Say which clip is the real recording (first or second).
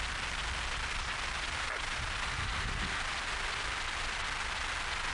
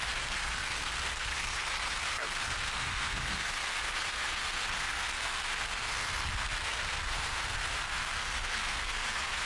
first